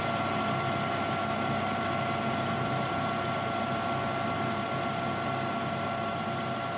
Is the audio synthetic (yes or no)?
no